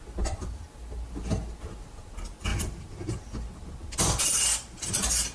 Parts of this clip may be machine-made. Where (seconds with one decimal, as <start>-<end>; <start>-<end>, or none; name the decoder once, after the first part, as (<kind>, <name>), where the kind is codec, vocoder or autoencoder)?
none